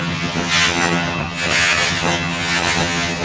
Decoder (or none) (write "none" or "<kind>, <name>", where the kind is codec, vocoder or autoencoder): vocoder, HiFi-GAN